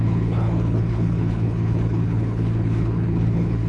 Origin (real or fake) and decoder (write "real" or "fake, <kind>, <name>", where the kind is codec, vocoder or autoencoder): fake, codec, HILCodec